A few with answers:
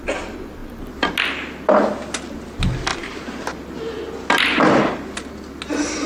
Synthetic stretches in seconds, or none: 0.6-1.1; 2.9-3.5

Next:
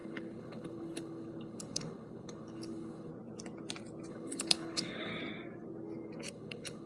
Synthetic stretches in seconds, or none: 0.0-3.1; 4.1-5.1; 6.3-6.9

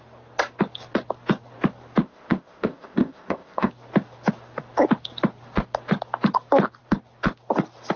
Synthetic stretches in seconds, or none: 2.0-3.7

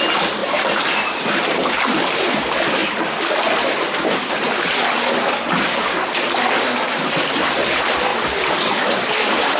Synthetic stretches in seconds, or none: 0.4-1.1; 8.1-8.8

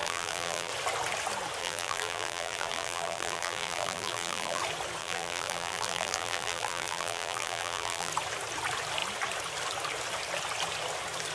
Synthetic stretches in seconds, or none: 0.0-0.7; 1.6-4.6; 5.0-8.1

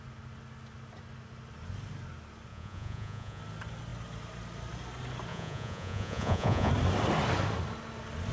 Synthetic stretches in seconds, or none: 2.5-3.4; 5.3-6.7

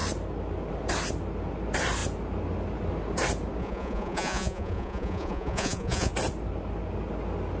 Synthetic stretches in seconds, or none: 3.6-6.1